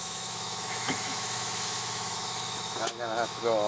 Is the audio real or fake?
fake